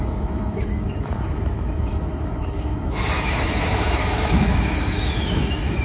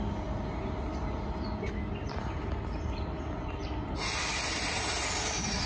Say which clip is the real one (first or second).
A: second